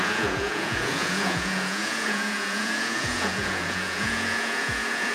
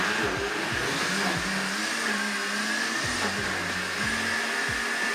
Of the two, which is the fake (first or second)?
first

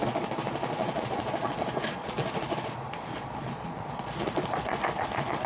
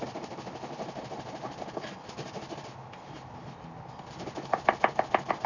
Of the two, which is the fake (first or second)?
first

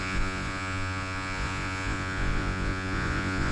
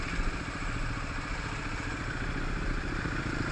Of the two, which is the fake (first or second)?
first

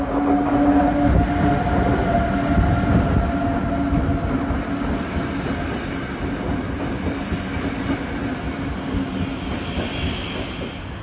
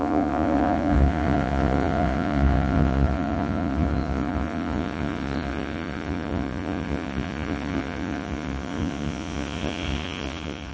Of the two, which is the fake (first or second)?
second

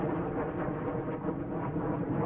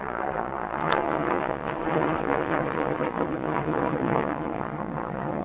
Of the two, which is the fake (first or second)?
second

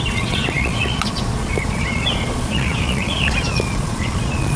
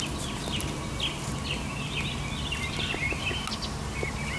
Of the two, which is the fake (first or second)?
first